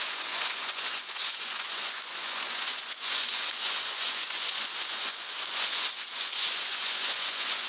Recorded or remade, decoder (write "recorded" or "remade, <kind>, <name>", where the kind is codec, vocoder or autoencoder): remade, vocoder, Vocos